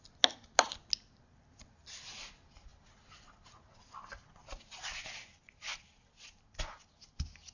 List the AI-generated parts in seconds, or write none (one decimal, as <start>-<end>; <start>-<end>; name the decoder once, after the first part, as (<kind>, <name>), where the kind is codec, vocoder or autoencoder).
none